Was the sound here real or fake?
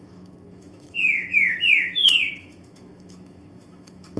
fake